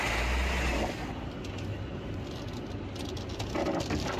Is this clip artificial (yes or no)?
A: no